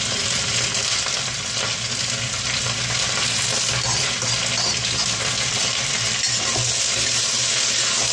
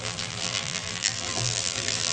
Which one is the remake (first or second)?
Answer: second